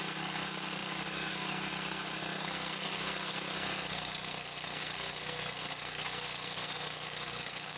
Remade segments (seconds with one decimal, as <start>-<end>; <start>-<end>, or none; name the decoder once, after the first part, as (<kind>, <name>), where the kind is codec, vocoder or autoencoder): 0.0-7.8 (codec, SNAC)